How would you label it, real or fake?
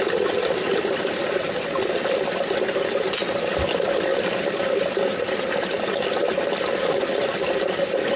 real